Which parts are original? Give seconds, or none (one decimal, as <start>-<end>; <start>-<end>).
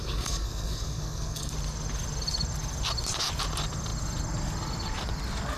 1.5-5.6